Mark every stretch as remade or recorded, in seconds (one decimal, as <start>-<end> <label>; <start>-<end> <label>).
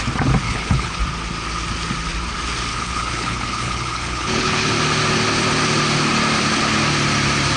0.0-0.4 recorded; 0.4-1.0 remade; 1.0-2.7 recorded; 2.7-4.7 remade; 4.7-7.6 recorded